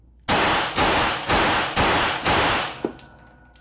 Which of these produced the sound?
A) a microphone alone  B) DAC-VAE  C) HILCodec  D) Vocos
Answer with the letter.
A